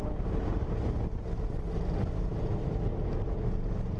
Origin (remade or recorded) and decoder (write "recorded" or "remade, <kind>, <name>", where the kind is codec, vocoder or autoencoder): recorded